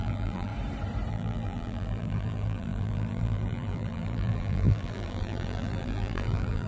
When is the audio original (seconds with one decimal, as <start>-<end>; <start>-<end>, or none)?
0.5-1.1